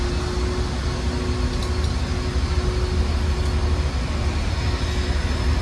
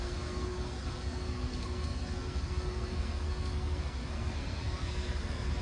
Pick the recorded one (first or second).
first